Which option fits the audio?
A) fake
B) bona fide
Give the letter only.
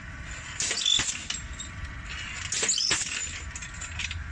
B